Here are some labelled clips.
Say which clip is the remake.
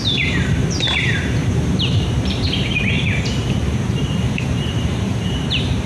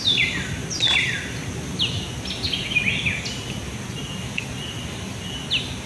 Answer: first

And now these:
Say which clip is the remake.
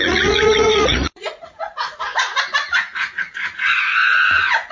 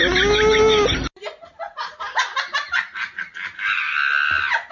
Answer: first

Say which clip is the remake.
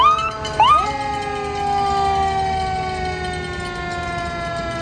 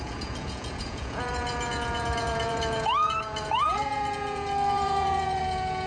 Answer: second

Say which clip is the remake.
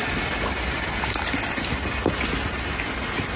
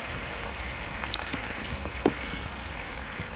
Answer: second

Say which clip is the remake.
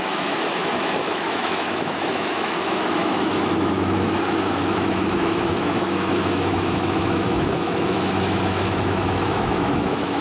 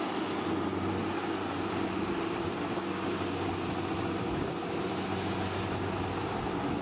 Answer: first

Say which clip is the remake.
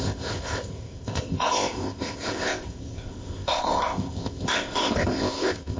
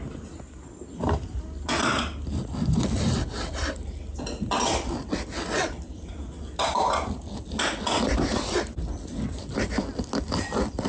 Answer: first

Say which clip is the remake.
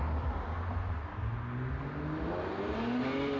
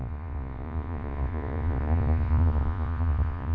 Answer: second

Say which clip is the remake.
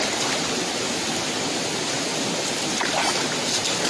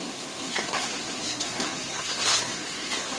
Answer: second